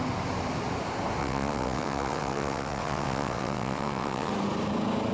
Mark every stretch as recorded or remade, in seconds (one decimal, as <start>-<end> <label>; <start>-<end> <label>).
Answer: 0.0-1.2 recorded; 1.2-4.3 remade; 4.3-5.1 recorded